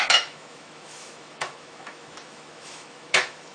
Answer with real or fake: fake